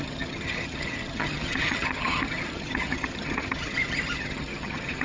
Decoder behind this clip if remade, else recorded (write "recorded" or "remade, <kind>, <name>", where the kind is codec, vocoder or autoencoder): remade, vocoder, HiFi-GAN